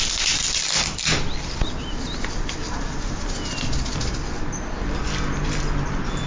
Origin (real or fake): real